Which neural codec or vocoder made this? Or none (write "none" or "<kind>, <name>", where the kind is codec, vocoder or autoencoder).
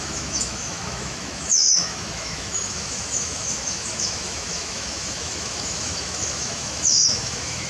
autoencoder, DAC-VAE